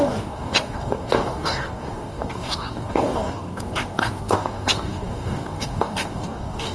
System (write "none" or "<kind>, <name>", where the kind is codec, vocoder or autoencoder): codec, DAC